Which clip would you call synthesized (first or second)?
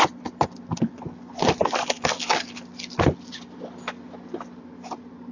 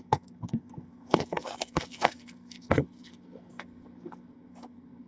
second